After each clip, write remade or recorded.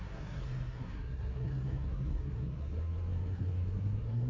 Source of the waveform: remade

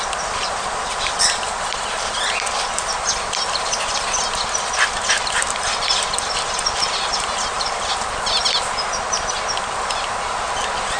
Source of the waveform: recorded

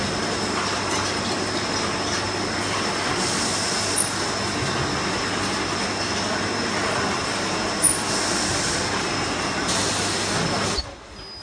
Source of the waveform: recorded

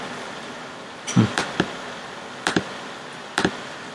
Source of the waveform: recorded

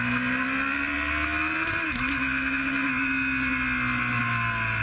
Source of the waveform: recorded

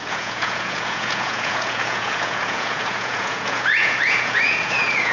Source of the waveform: remade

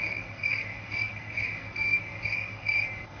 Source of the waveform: remade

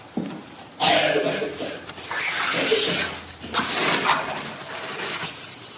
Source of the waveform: recorded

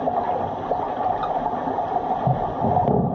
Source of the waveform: recorded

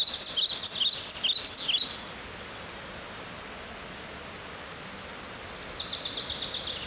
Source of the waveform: recorded